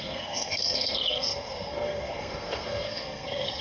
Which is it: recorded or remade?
remade